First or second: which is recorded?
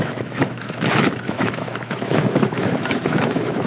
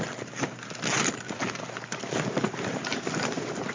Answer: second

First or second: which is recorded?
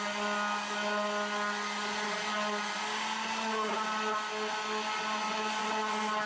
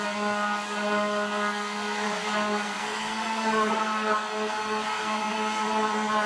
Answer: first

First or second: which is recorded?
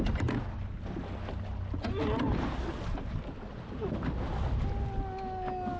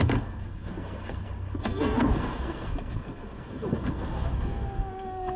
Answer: first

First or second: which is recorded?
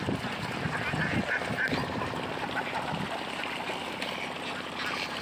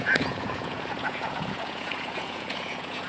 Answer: first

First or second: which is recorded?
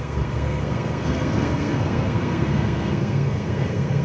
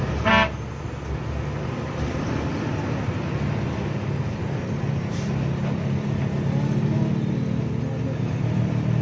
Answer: second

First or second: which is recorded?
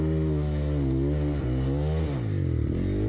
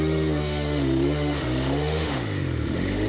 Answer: first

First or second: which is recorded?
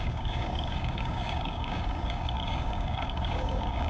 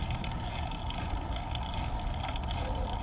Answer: second